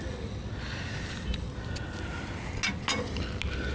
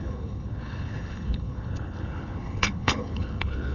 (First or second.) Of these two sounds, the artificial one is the second